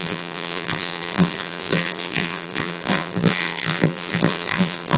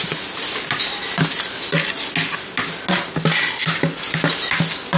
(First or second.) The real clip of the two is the second